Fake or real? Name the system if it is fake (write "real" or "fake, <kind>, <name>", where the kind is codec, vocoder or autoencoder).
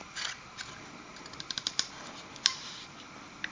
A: real